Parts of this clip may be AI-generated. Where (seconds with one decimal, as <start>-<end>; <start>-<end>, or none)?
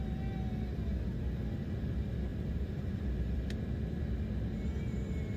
2.3-3.6